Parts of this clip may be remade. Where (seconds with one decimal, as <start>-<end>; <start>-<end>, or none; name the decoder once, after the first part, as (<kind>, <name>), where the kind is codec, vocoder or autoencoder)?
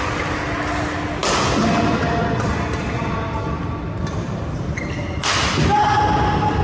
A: none